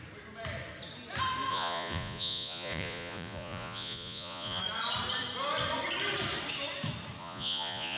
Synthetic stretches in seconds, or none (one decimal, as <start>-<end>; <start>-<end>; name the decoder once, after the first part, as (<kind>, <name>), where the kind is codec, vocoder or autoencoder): 1.5-4.6 (vocoder, Vocos); 7.2-8.0